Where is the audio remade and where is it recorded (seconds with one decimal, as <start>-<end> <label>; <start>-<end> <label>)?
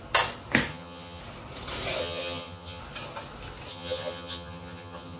0.0-0.7 recorded; 0.7-1.2 remade; 1.2-2.0 recorded; 2.0-2.8 remade; 2.8-3.7 recorded; 3.7-5.2 remade